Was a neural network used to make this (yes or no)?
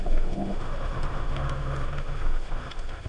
yes